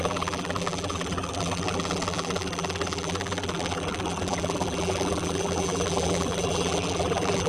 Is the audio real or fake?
fake